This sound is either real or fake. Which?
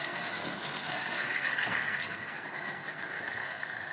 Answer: fake